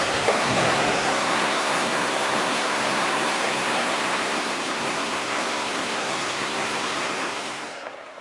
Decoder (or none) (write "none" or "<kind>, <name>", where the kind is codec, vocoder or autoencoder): codec, SNAC